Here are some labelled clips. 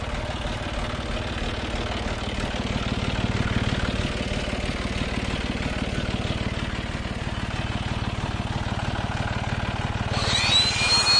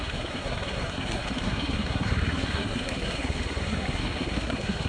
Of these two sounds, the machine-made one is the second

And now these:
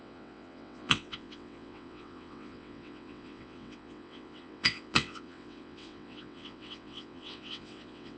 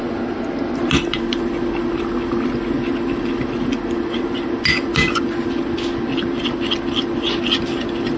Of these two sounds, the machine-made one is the first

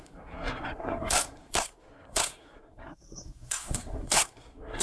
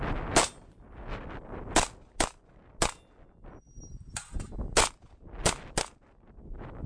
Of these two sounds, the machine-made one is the first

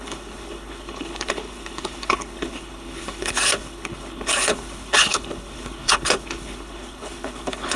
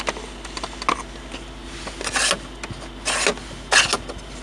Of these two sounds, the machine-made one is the first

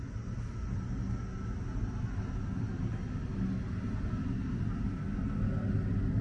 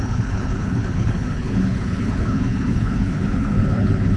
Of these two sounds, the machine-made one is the second